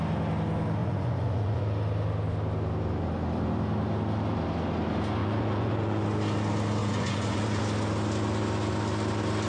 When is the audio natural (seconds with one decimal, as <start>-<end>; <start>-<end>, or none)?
0.0-0.8; 1.6-5.2; 6.0-6.8; 7.6-9.5